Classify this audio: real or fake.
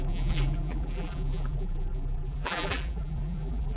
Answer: fake